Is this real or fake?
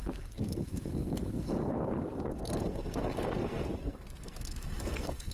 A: fake